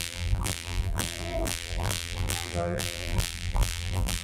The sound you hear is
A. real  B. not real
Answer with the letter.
B